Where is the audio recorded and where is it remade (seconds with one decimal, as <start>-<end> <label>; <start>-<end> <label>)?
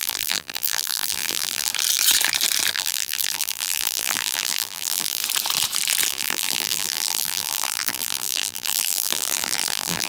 0.0-1.7 remade; 1.7-2.7 recorded; 2.7-5.2 remade; 5.2-6.1 recorded; 6.1-10.1 remade